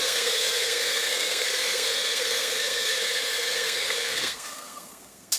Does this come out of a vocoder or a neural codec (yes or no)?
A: yes